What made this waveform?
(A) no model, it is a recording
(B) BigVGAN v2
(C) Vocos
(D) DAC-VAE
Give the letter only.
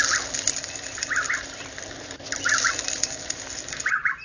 A